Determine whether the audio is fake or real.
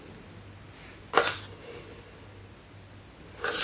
real